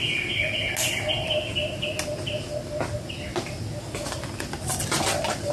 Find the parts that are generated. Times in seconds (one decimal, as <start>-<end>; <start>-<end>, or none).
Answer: none